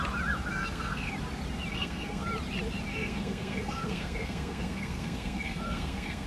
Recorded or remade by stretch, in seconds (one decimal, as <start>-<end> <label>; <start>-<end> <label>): 0.0-0.5 recorded; 0.5-1.1 remade; 1.1-1.7 recorded; 1.7-2.3 remade; 2.3-2.9 recorded; 2.9-6.3 remade